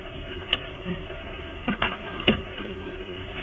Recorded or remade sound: remade